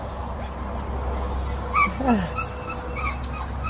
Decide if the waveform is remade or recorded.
recorded